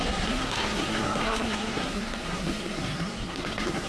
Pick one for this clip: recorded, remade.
remade